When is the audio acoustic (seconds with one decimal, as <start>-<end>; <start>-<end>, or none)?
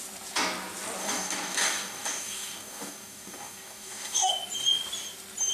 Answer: 0.0-1.0; 4.3-5.5